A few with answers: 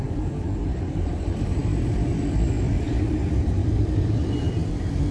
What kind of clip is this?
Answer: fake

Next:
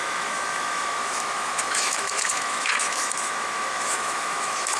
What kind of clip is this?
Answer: fake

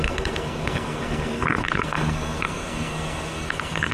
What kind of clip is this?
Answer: fake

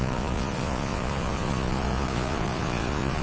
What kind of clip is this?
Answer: fake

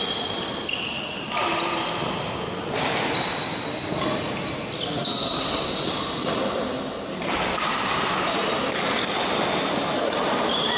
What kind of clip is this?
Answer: real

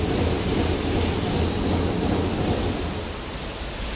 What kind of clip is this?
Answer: real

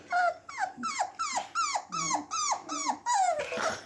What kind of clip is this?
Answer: real